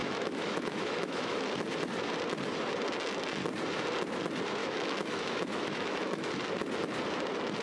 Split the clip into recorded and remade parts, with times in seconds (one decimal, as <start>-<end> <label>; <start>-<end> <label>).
0.0-1.5 remade; 1.5-4.6 recorded; 4.6-6.3 remade; 6.3-7.6 recorded